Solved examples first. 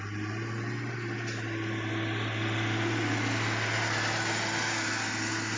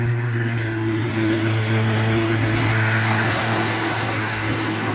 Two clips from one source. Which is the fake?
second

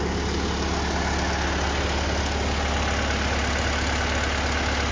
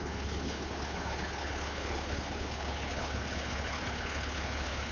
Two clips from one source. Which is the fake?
second